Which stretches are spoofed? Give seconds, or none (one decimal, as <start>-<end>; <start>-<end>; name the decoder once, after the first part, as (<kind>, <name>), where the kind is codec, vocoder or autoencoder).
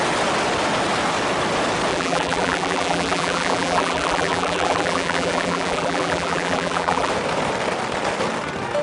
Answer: 1.9-7.1 (vocoder, BigVGAN v2)